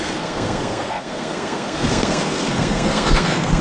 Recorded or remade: remade